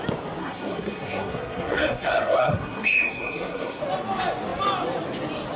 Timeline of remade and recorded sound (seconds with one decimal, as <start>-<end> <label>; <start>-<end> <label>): 0.0-0.4 recorded; 0.4-3.8 remade; 3.8-5.6 recorded